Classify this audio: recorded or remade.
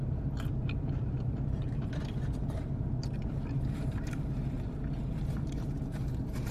remade